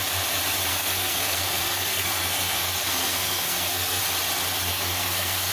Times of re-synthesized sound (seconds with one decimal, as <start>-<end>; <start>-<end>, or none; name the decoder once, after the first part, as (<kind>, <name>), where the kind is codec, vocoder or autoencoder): 0.7-4.0 (codec, SNAC); 4.7-5.5